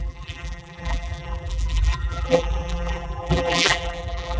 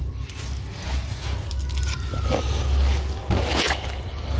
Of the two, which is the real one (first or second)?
second